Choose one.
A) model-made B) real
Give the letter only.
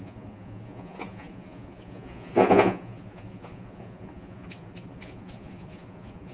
A